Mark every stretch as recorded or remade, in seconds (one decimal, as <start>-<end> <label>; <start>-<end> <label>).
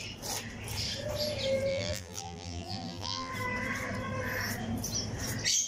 0.0-1.7 recorded; 1.7-3.3 remade; 3.3-5.7 recorded